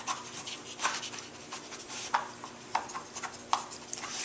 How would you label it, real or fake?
real